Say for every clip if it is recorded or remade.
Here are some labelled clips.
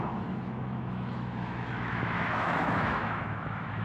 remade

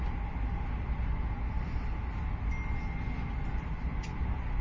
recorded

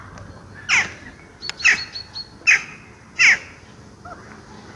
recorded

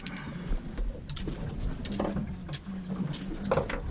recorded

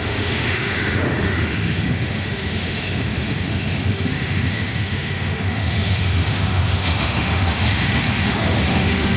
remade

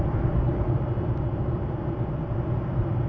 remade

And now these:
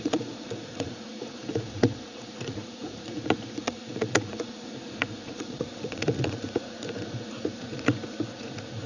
remade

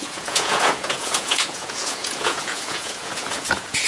remade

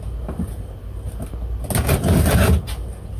recorded